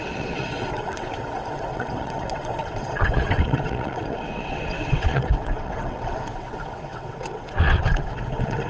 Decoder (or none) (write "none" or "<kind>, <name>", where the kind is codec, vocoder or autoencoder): vocoder, WaveNeXt